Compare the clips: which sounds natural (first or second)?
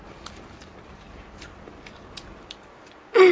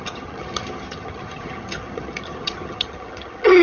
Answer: first